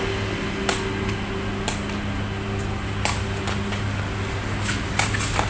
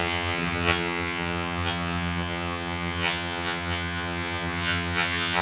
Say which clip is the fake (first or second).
second